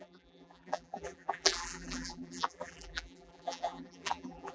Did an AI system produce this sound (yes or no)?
yes